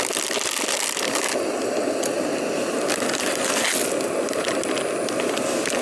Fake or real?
real